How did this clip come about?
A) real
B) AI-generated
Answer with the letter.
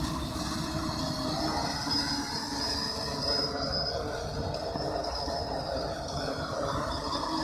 A